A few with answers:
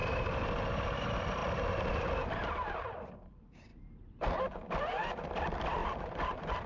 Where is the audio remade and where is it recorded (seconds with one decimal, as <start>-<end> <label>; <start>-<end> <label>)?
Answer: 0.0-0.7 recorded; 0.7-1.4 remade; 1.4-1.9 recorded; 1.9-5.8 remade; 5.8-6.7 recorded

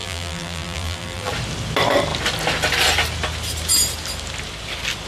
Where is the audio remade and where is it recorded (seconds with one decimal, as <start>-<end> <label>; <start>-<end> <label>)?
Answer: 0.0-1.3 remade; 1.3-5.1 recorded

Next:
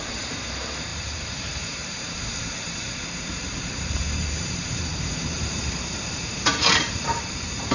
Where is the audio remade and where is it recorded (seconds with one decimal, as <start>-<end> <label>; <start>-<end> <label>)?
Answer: 0.0-7.7 remade